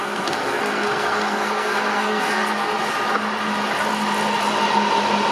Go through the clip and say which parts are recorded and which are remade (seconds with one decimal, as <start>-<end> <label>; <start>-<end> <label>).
0.0-2.7 remade; 2.7-5.3 recorded